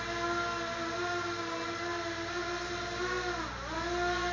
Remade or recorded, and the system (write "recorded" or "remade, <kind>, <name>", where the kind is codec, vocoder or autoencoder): recorded